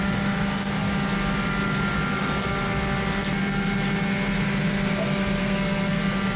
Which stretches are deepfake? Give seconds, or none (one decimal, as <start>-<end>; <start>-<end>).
5.4-6.0